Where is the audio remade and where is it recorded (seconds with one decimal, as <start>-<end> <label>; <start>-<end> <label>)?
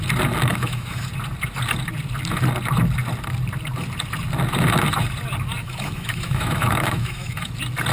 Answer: 0.0-0.5 recorded; 0.5-1.1 remade; 1.1-5.6 recorded; 5.6-7.5 remade; 7.5-7.9 recorded